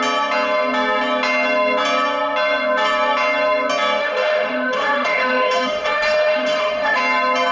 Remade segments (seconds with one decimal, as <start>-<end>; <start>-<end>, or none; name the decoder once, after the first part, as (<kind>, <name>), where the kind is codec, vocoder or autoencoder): 4.0-7.0 (autoencoder, DAC-VAE)